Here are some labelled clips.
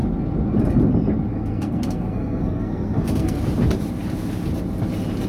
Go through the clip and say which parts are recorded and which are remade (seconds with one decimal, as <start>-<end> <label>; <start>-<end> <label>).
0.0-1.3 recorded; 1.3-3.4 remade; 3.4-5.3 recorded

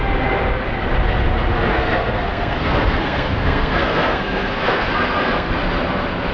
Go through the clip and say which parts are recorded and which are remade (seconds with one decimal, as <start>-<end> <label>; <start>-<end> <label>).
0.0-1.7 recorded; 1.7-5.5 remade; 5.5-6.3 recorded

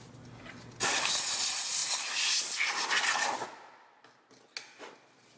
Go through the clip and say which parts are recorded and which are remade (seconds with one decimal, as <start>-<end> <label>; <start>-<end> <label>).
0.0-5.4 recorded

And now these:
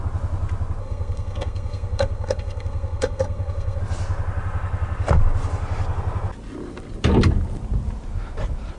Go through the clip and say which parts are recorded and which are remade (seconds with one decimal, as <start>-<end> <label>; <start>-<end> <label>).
0.0-0.8 recorded; 0.8-3.8 remade; 3.8-8.8 recorded